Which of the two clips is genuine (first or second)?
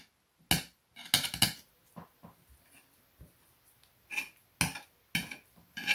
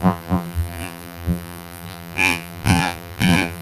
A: first